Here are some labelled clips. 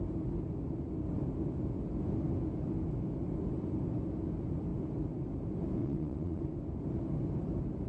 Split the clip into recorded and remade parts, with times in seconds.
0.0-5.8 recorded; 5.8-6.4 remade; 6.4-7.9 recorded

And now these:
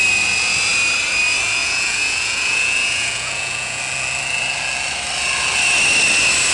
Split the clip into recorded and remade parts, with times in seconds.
0.0-1.6 recorded; 1.6-3.8 remade; 3.8-6.5 recorded

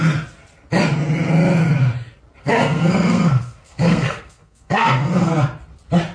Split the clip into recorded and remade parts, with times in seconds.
0.0-2.4 recorded; 2.4-5.3 remade; 5.3-6.1 recorded